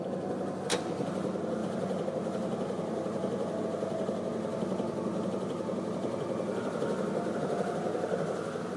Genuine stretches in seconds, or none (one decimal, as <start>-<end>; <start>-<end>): 0.0-8.8